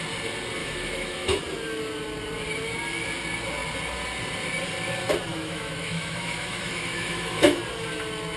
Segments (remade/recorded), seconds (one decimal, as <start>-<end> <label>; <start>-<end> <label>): 0.0-0.6 recorded; 0.6-1.4 remade; 1.4-5.3 recorded; 5.3-7.6 remade; 7.6-8.4 recorded